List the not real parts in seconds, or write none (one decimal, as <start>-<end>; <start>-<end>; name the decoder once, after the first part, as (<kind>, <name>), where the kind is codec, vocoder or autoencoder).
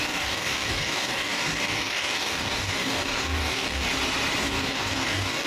0.0-3.9 (codec, DAC); 4.4-5.5